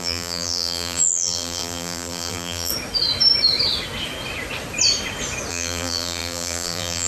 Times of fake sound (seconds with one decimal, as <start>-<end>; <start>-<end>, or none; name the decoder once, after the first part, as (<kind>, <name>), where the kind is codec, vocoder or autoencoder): 0.0-2.7 (vocoder, BigVGAN v2); 5.5-7.1